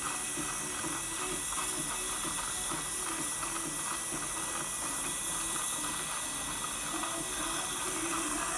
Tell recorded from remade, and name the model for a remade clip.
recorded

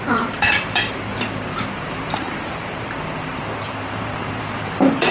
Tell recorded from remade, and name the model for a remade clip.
remade, vocoder, BigVGAN v2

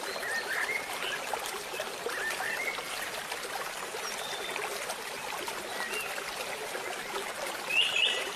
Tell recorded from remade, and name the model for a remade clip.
recorded